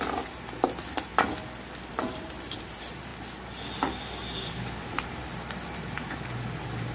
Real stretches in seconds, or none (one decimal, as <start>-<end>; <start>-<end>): 1.1-1.9; 3.1-4.8